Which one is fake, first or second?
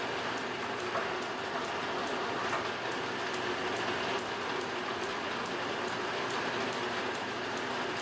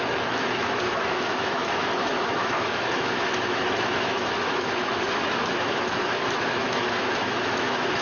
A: second